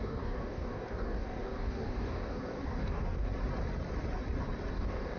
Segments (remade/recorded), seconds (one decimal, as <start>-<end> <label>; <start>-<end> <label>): 0.0-3.3 remade; 3.3-4.7 recorded; 4.7-5.2 remade